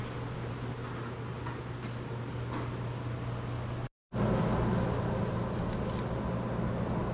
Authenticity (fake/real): real